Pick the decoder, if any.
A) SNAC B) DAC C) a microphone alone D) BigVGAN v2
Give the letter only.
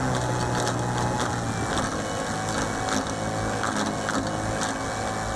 C